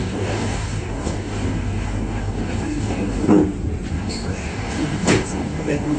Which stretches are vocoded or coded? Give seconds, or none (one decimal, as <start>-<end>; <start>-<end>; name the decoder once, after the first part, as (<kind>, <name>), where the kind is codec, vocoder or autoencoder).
0.0-3.4 (codec, DAC); 3.9-6.0

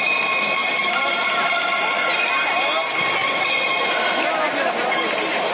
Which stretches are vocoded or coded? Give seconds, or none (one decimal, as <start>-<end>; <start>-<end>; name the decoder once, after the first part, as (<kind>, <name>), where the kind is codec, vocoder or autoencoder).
none